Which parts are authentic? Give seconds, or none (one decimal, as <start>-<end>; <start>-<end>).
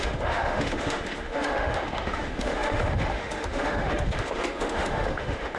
none